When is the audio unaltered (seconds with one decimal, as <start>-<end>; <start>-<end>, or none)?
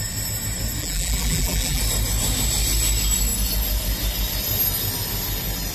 0.0-0.8; 1.8-5.7